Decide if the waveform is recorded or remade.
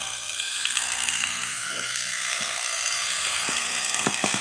remade